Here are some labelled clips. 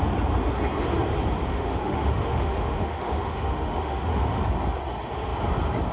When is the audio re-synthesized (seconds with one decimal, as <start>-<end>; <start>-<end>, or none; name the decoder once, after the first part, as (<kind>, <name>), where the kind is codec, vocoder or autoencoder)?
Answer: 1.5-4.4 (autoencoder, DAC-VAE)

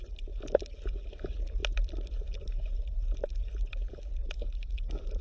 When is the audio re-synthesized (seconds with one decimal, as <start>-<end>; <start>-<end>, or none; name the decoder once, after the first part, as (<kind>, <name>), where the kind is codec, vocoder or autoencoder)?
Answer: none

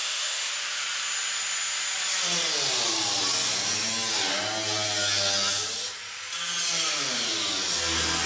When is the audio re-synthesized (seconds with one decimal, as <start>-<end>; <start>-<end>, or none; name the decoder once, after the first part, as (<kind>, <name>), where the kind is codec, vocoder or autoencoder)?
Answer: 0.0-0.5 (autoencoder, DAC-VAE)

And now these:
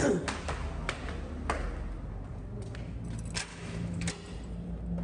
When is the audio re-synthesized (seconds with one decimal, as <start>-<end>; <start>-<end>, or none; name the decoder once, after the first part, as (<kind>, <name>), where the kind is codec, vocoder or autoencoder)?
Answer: 3.5-4.1 (autoencoder, DAC-VAE)